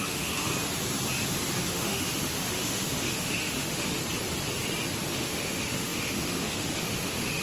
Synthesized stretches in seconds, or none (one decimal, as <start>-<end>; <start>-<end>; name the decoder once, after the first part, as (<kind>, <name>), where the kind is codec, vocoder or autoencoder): 0.0-0.5 (autoencoder, DAC-VAE); 1.7-4.0; 5.1-7.4